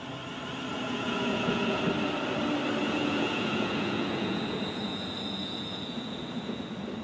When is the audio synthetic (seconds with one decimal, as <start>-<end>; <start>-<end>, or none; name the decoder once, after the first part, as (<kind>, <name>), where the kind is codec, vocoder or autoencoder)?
0.7-1.8 (vocoder, Vocos); 2.8-6.6